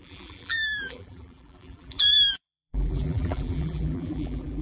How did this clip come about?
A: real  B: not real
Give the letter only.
B